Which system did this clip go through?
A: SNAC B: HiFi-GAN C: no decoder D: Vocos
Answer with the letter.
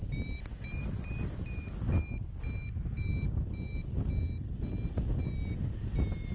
C